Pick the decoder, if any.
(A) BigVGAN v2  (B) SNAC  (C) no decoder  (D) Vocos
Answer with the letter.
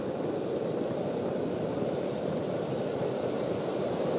C